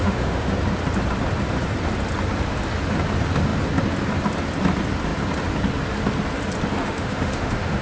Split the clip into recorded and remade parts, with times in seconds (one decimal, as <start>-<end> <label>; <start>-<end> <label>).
0.0-0.5 remade; 0.5-6.8 recorded; 6.8-7.8 remade

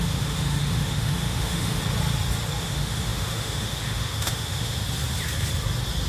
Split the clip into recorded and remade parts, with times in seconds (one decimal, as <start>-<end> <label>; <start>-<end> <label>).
0.0-1.8 remade; 1.8-2.6 recorded; 2.6-4.8 remade; 4.8-6.1 recorded